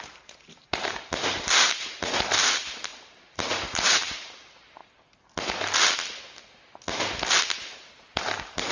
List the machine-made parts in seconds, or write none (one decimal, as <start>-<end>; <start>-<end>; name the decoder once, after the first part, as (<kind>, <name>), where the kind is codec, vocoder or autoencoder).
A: 0.0-4.8 (vocoder, BigVGAN v2); 7.4-8.7